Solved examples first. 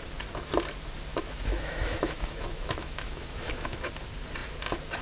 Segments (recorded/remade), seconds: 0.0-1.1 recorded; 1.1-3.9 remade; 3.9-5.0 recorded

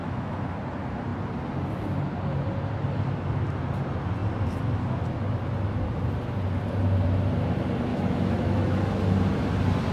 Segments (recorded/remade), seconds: 0.0-0.6 remade; 0.6-7.9 recorded; 7.9-9.0 remade; 9.0-9.9 recorded

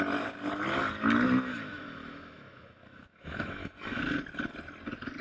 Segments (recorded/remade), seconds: 0.0-1.5 recorded; 1.5-4.0 remade; 4.0-5.2 recorded